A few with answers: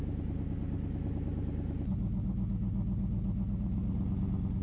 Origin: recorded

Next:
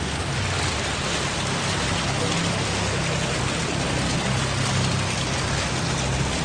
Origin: recorded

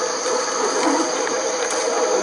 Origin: recorded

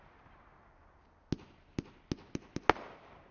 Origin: recorded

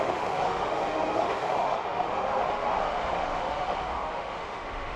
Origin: remade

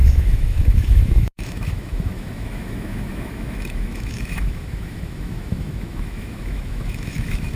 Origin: remade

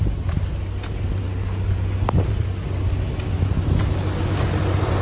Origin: recorded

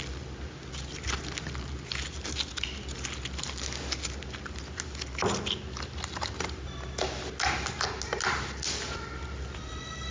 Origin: recorded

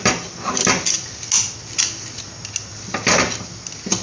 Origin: recorded